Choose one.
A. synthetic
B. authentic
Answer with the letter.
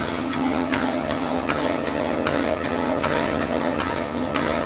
A